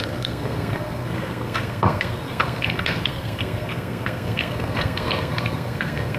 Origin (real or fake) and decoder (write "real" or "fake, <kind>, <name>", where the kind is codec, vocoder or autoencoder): fake, codec, SNAC